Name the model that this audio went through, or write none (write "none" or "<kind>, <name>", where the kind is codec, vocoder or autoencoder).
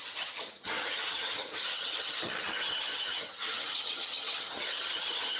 vocoder, HiFi-GAN